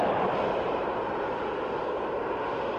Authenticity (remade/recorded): remade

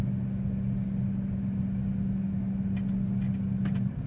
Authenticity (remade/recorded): recorded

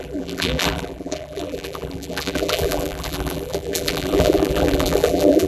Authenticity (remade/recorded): remade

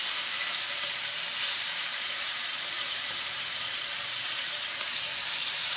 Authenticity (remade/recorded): remade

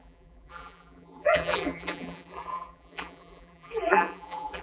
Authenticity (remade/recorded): remade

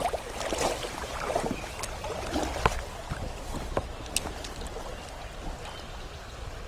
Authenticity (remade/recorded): recorded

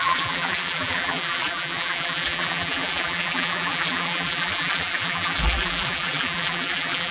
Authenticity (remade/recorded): remade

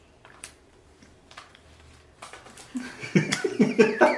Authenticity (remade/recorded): remade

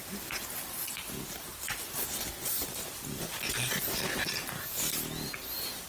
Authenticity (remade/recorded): recorded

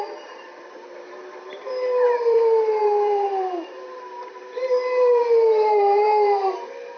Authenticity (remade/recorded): remade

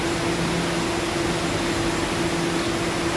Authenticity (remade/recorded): recorded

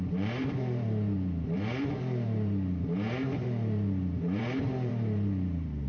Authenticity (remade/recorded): remade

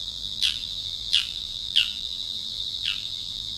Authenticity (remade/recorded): remade